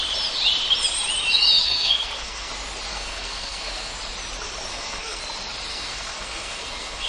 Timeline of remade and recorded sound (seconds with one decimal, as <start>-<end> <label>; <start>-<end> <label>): 0.0-1.6 recorded; 1.6-2.5 remade; 2.5-2.9 recorded; 2.9-3.9 remade; 3.9-4.7 recorded; 4.7-5.2 remade; 5.2-5.7 recorded; 5.7-7.1 remade